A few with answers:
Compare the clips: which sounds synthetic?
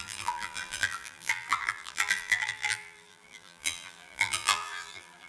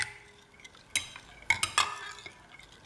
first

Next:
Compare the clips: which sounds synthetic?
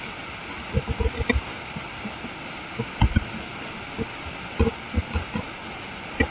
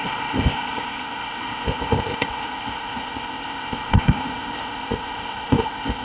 second